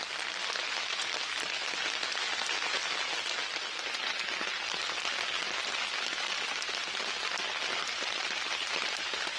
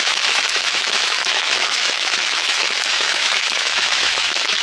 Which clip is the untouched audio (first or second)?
first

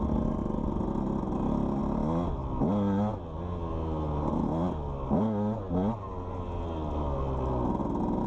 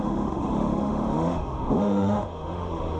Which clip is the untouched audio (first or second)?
first